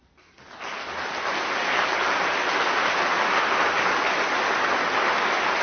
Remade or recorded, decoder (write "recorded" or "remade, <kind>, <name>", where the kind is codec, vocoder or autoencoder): recorded